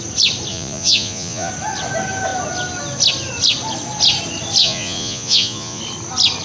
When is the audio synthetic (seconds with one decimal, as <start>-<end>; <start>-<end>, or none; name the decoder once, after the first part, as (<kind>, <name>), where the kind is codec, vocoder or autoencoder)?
0.5-1.5 (vocoder, Vocos); 4.6-5.8